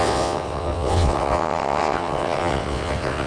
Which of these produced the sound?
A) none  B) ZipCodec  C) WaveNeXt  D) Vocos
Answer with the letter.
C